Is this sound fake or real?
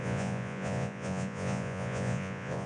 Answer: fake